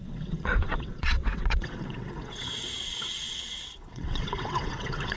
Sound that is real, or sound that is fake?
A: fake